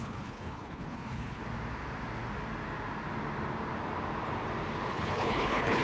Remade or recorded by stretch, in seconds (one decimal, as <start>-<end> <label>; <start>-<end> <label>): 0.0-1.4 remade; 1.4-4.9 recorded; 4.9-5.8 remade